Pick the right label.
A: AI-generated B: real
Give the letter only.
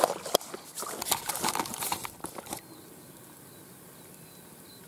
B